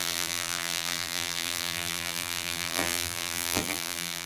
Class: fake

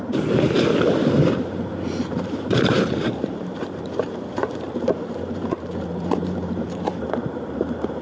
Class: fake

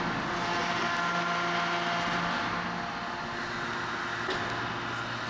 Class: real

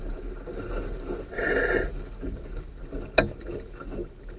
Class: real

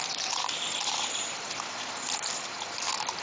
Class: fake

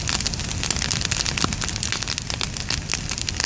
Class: real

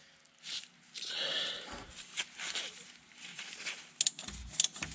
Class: real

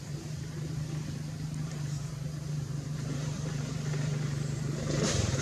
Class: fake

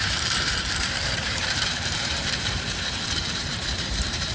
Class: fake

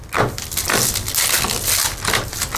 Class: real